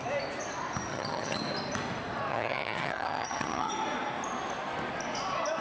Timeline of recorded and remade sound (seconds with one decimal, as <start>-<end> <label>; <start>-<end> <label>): 0.0-0.9 recorded; 0.9-1.4 remade; 1.4-2.3 recorded; 2.3-3.7 remade; 3.7-5.6 recorded